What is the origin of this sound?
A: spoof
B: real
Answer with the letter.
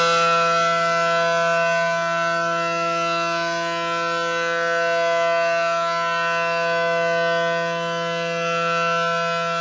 B